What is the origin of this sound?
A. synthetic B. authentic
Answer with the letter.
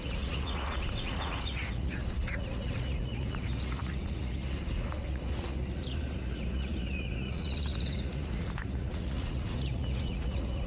A